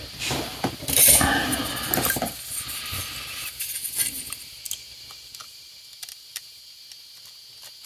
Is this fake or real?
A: real